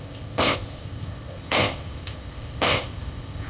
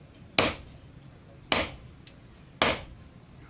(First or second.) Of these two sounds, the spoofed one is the first